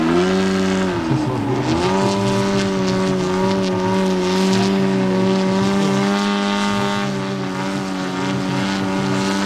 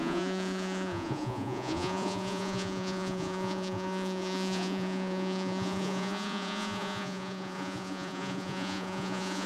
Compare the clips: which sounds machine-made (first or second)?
second